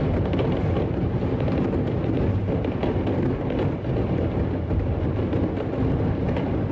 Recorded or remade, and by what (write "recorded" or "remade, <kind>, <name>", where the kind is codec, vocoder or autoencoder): recorded